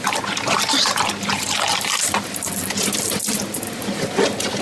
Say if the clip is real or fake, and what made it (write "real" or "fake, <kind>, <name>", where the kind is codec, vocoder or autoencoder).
real